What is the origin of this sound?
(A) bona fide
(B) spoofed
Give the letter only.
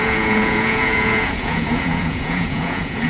B